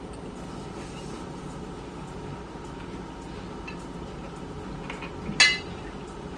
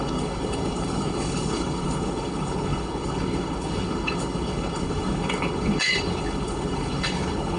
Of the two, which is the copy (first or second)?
second